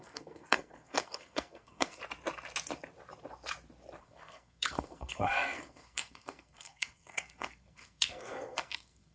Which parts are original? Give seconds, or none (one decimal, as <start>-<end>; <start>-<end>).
2.0-4.0